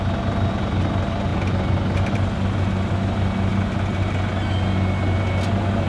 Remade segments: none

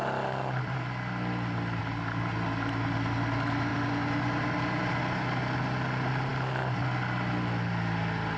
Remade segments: none

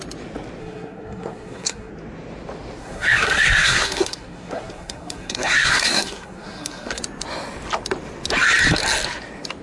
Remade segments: 0.6-1.9 (codec, SNAC); 2.8-7.0

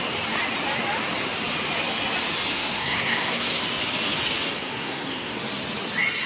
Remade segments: 2.5-3.6 (codec, SNAC); 4.6-5.4

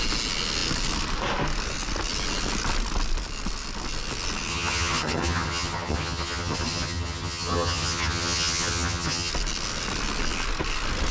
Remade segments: 4.5-9.3 (vocoder, HiFi-GAN)